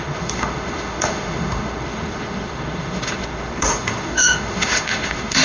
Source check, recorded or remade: remade